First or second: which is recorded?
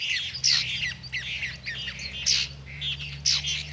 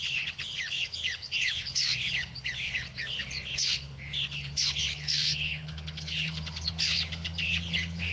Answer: first